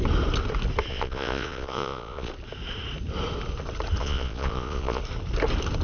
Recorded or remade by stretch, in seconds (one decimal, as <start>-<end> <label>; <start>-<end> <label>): 0.0-0.9 recorded; 0.9-2.3 remade; 2.3-4.0 recorded; 4.0-5.0 remade; 5.0-5.8 recorded